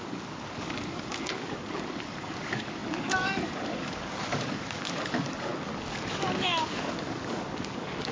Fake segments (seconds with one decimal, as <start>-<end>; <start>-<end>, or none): 0.0-8.1